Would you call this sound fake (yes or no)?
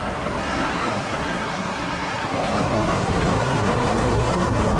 yes